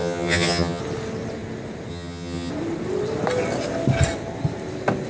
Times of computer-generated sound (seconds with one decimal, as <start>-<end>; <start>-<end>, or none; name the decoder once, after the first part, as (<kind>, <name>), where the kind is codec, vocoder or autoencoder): 0.0-0.8 (vocoder, HiFi-GAN); 1.9-2.5